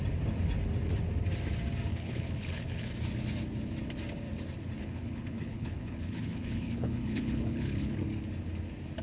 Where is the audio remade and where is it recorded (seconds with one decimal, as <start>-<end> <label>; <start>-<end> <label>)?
0.0-1.9 recorded; 1.9-2.9 remade; 2.9-4.8 recorded; 4.8-7.9 remade; 7.9-9.0 recorded